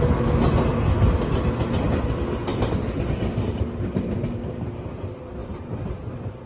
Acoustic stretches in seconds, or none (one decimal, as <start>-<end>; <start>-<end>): 0.0-2.5; 3.6-6.5